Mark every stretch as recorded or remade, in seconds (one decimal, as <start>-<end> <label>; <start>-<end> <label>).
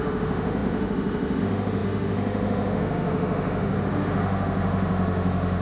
0.0-5.6 remade